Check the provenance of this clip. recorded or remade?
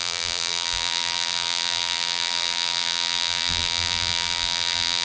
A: remade